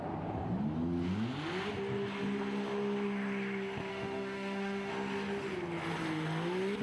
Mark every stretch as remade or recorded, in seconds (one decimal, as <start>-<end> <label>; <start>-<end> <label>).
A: 0.0-3.9 recorded; 3.9-4.9 remade; 4.9-6.8 recorded

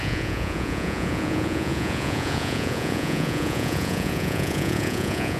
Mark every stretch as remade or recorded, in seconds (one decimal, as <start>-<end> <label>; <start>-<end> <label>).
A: 0.0-5.4 remade

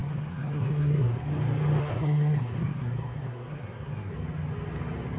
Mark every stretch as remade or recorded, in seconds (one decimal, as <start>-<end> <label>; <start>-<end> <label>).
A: 0.0-1.3 remade; 1.3-1.8 recorded; 1.8-4.1 remade; 4.1-5.2 recorded

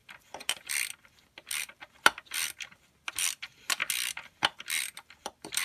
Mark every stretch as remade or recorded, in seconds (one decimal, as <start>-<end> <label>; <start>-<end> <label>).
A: 0.0-3.8 remade; 3.8-4.4 recorded; 4.4-5.6 remade

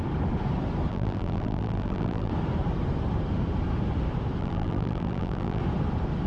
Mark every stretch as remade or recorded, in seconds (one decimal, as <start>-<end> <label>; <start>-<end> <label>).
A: 0.0-0.9 recorded; 0.9-2.3 remade; 2.3-4.4 recorded; 4.4-5.6 remade; 5.6-6.3 recorded

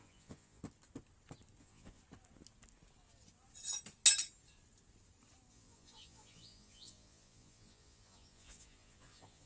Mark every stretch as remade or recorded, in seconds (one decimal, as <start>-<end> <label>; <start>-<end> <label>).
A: 0.0-0.6 remade; 0.6-1.6 recorded; 1.6-2.0 remade; 2.0-5.5 recorded; 5.5-9.5 remade